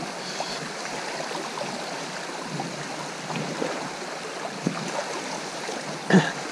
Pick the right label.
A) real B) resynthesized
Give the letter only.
A